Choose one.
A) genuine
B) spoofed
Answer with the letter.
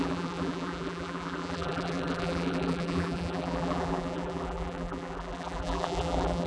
B